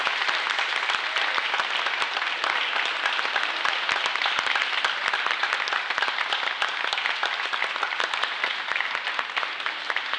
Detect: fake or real real